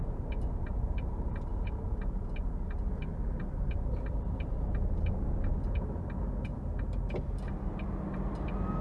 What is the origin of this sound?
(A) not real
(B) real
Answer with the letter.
B